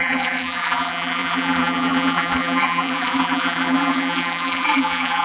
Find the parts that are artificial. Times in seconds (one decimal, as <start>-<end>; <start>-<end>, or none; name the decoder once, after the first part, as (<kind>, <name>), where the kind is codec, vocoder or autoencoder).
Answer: 0.0-5.2 (vocoder, BigVGAN v2)